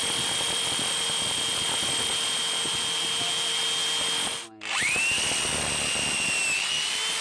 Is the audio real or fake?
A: real